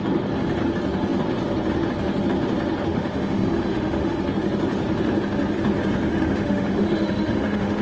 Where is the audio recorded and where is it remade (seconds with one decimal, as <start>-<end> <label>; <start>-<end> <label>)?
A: 0.0-2.9 recorded; 2.9-4.2 remade; 4.2-6.1 recorded; 6.1-7.8 remade